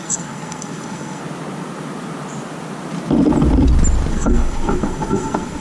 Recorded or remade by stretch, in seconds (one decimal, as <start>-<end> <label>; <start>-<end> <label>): 0.0-1.2 remade; 1.2-4.1 recorded; 4.1-5.6 remade